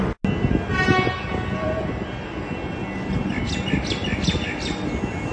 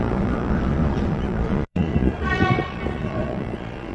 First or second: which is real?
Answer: first